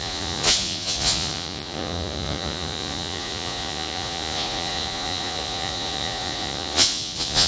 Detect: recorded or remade remade